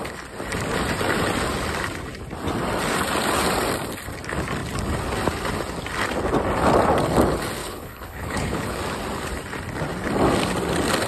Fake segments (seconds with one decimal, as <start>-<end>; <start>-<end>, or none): 7.6-8.8